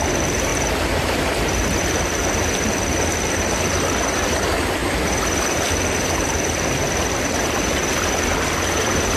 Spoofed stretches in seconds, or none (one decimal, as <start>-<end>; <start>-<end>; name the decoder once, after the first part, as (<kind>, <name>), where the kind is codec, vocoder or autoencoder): none